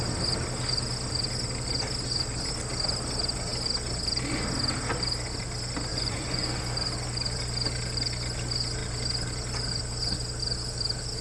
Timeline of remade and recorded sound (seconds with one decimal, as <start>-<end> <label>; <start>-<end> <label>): 0.0-5.9 recorded; 5.9-6.6 remade; 6.6-11.2 recorded